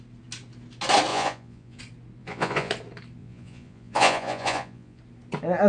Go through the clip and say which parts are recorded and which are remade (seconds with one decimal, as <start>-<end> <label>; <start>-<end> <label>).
0.0-1.1 recorded; 1.1-1.8 remade; 1.8-2.2 recorded; 2.2-2.7 remade; 2.7-3.2 recorded; 3.2-5.0 remade; 5.0-5.7 recorded